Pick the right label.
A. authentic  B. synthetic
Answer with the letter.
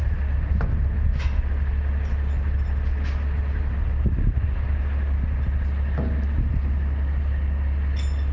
A